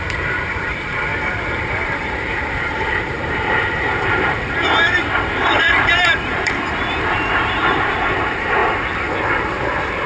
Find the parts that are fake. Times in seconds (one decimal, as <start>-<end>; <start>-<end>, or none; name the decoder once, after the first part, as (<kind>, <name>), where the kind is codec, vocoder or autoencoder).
0.0-8.6 (vocoder, BigVGAN v2); 9.3-10.1